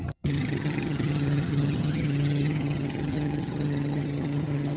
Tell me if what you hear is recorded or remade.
remade